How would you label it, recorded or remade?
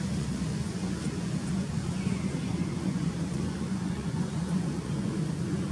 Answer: remade